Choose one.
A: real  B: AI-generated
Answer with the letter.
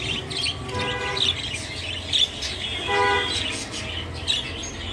A